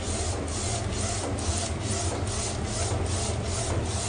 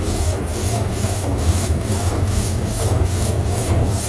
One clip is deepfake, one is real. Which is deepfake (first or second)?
second